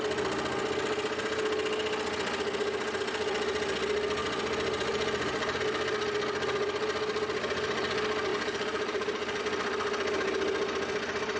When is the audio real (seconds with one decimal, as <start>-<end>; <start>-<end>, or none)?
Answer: 0.0-4.2; 5.6-8.3; 9.4-11.4